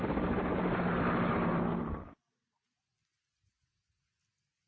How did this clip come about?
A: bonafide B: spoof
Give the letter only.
A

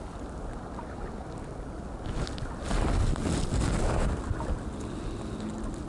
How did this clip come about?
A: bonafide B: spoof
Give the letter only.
A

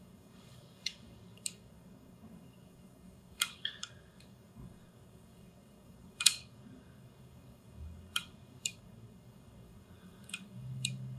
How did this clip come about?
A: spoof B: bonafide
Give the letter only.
A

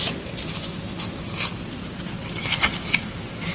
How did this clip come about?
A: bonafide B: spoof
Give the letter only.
A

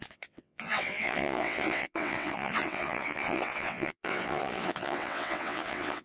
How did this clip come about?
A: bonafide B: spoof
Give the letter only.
B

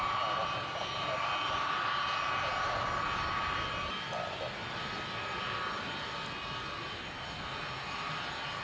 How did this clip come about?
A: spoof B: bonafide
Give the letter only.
B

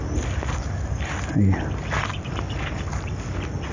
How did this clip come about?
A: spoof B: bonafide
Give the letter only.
B